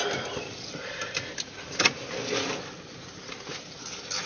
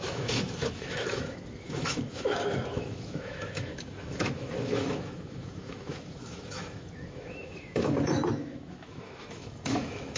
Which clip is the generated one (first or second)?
second